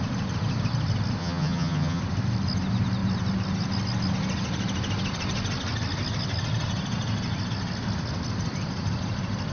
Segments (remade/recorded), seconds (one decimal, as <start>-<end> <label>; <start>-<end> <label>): 0.0-1.2 recorded; 1.2-2.0 remade; 2.0-9.5 recorded